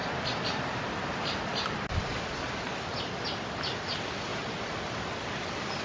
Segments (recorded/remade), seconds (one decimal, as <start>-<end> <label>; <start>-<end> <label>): 0.0-5.8 recorded